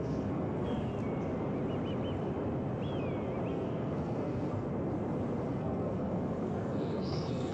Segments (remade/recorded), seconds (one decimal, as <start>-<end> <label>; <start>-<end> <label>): 0.0-0.9 remade; 0.9-3.5 recorded; 3.5-4.7 remade; 4.7-5.5 recorded; 5.5-7.5 remade